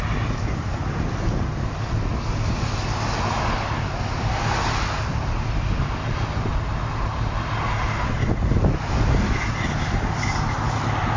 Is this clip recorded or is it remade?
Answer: recorded